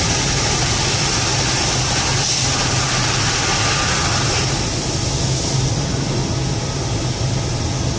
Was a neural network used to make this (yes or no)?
no